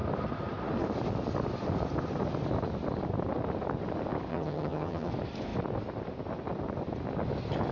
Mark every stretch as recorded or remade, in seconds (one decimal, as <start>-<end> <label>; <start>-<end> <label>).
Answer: 0.0-4.3 recorded; 4.3-5.1 remade; 5.1-7.7 recorded